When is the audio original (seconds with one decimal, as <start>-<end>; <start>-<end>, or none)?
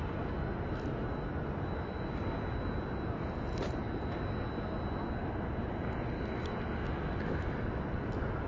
0.0-8.5